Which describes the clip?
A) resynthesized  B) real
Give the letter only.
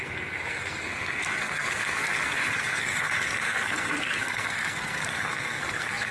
A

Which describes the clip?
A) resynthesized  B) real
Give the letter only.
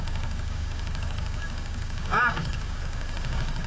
A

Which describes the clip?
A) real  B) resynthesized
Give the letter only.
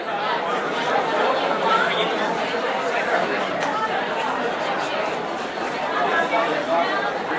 B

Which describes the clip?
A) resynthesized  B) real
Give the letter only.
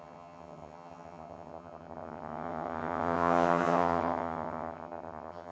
A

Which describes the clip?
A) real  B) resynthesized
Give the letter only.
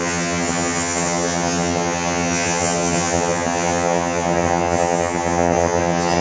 B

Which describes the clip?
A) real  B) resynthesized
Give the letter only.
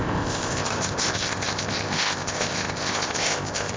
B